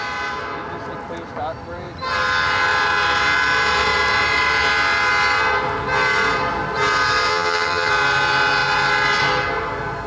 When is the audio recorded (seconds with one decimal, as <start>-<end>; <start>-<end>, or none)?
0.0-7.3; 7.9-10.1